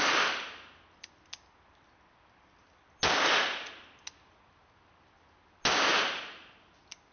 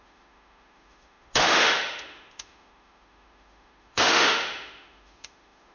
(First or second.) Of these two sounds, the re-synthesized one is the second